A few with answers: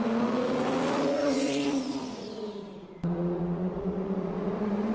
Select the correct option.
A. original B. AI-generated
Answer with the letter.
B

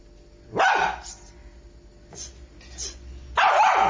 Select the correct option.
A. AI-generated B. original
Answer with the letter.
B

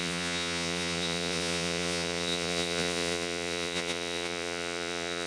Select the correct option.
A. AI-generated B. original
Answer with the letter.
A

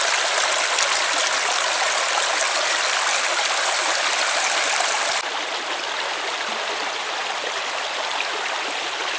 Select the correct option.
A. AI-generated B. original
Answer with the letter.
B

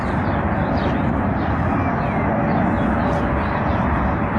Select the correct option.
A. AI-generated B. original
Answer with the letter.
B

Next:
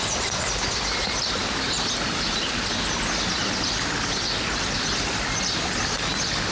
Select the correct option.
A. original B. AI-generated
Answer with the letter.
A